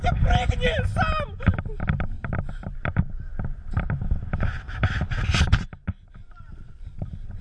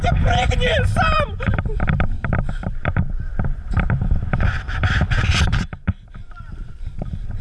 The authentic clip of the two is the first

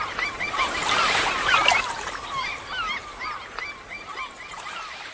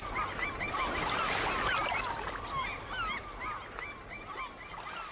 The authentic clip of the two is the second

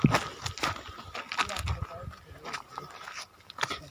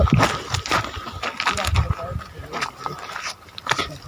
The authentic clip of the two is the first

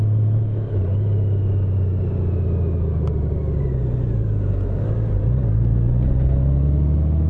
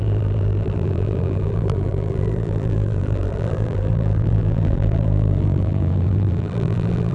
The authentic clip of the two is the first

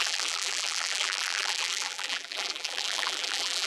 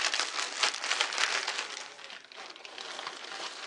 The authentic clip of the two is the second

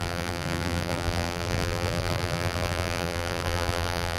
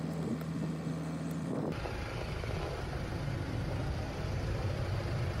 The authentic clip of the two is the second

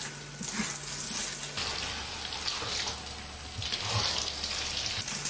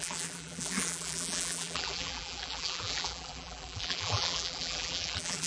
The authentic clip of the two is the first